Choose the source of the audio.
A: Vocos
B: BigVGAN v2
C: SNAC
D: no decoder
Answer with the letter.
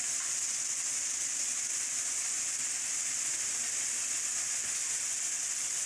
D